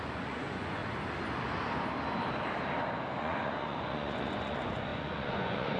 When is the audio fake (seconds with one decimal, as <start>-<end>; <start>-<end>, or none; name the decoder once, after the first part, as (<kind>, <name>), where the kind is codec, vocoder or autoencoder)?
0.0-0.8 (vocoder, Vocos); 3.2-5.8